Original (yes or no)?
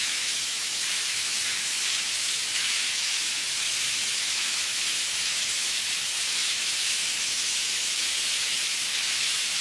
no